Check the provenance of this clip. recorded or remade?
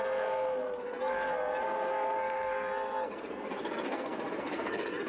remade